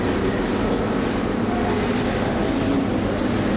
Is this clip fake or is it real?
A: real